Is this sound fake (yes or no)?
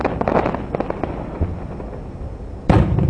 yes